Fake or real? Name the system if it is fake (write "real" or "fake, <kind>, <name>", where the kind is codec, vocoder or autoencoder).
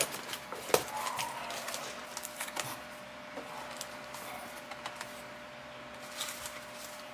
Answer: real